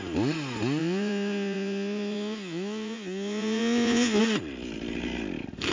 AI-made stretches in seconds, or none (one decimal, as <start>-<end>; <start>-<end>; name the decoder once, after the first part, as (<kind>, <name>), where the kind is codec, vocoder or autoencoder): 0.8-4.2 (vocoder, Vocos)